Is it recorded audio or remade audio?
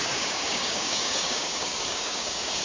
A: remade